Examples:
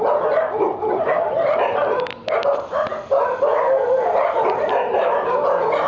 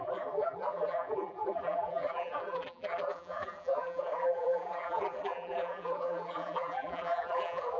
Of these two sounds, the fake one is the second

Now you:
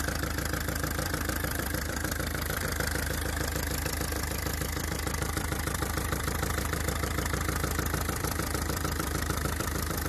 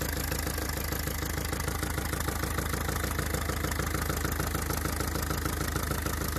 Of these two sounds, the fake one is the first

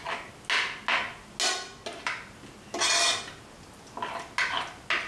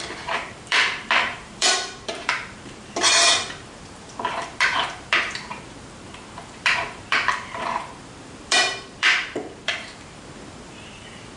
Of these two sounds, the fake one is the second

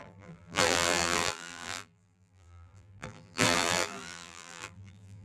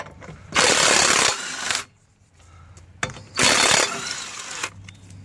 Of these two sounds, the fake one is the first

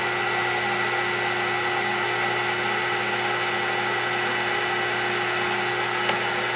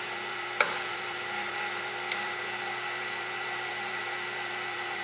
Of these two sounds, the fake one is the second